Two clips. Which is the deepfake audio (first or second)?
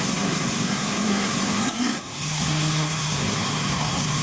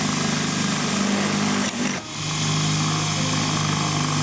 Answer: first